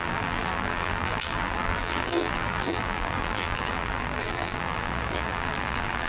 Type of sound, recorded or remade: remade